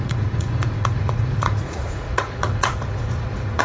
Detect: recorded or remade remade